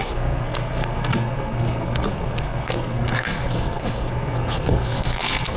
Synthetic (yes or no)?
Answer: yes